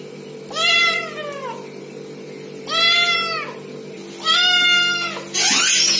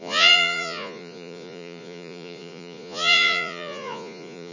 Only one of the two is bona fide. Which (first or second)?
first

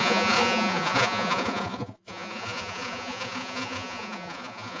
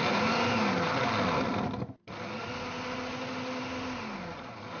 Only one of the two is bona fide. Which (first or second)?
second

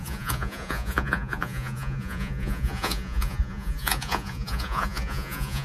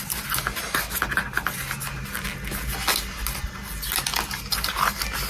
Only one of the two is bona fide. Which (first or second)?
second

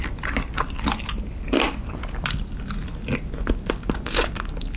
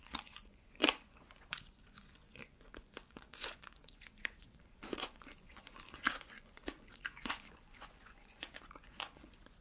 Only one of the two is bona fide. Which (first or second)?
first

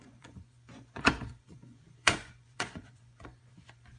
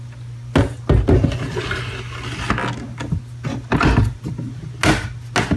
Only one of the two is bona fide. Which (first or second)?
second